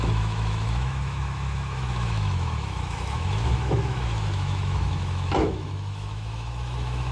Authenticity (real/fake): fake